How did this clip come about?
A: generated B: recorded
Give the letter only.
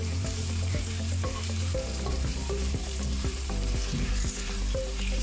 A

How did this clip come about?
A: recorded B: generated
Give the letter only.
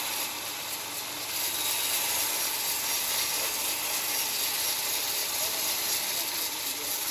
A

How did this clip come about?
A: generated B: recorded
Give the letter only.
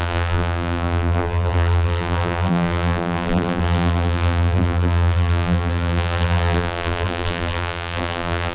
A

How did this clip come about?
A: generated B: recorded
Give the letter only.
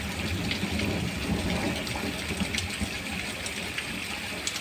B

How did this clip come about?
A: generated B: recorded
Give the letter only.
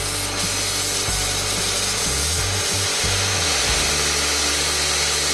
B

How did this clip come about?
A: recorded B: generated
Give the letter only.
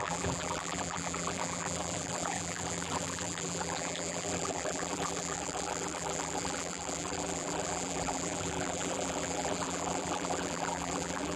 B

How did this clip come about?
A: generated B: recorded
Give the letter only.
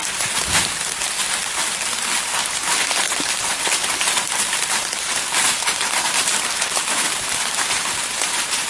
B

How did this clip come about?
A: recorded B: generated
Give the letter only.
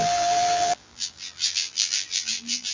B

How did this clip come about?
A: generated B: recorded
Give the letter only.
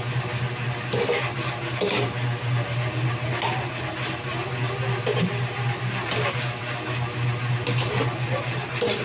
B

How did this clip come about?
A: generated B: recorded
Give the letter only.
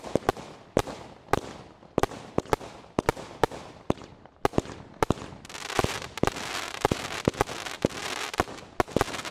B